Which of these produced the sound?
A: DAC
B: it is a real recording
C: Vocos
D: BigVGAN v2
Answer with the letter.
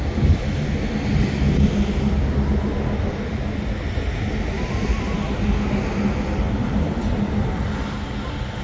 B